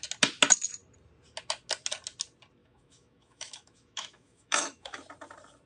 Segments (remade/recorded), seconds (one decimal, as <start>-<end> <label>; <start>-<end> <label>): 0.0-2.6 recorded; 2.6-5.0 remade; 5.0-5.7 recorded